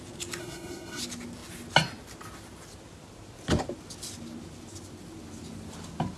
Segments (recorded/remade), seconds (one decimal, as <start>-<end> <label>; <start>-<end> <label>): 0.0-0.4 recorded; 0.4-1.0 remade; 1.0-6.2 recorded